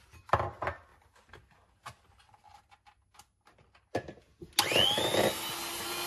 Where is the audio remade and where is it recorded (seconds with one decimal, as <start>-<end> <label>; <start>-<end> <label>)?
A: 0.0-6.1 recorded